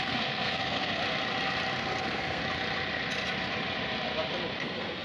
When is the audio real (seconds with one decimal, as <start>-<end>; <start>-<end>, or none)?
1.0-1.8; 2.4-4.6